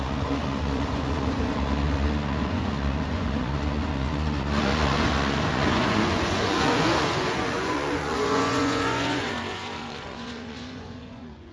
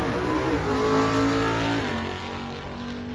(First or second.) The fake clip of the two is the first